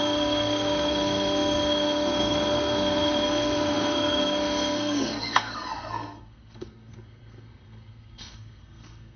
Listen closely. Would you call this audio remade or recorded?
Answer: remade